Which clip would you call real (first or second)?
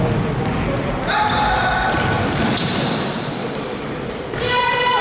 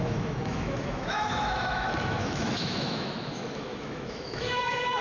first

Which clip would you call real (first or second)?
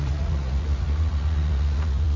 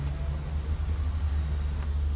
second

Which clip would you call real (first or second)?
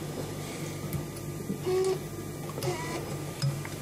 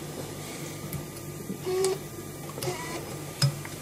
first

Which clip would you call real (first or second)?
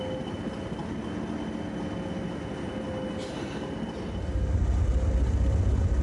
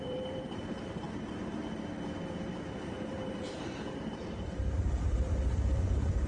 first